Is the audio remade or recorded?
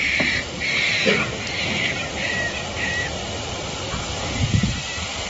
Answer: recorded